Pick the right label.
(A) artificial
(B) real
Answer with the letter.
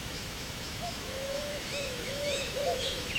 A